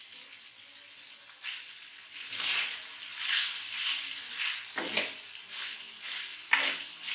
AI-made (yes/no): no